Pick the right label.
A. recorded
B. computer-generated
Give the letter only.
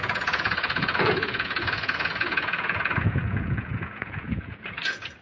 B